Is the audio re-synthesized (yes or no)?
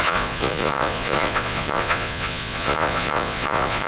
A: yes